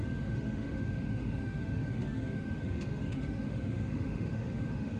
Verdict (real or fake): fake